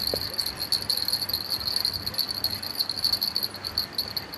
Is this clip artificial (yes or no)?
no